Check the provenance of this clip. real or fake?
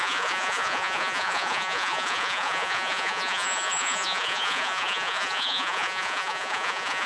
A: fake